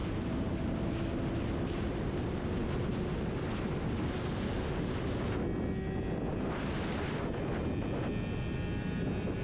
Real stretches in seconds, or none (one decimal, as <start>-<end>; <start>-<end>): 0.0-9.4